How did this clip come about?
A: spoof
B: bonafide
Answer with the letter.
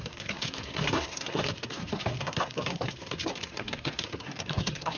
A